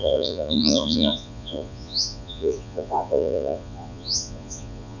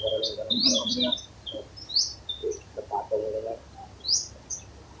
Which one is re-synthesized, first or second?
first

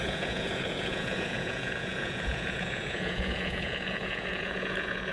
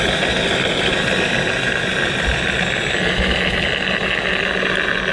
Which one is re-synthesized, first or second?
first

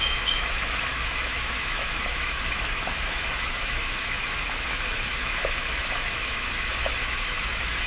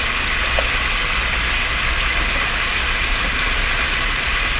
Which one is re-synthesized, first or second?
first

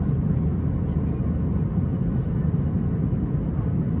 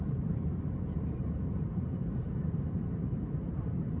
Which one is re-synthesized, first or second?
second